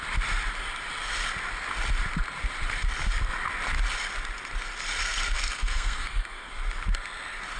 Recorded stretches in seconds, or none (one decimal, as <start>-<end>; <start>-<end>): 0.0-5.0; 6.5-7.6